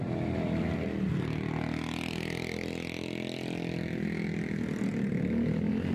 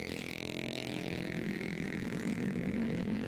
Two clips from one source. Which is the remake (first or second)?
second